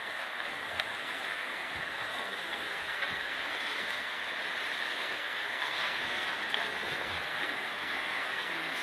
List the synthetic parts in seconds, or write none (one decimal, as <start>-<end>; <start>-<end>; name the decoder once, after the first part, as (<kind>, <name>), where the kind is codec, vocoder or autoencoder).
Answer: 0.0-4.3 (codec, SNAC); 4.8-8.8